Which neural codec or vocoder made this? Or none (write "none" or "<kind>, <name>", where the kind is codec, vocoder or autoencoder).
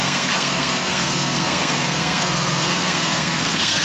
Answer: codec, SNAC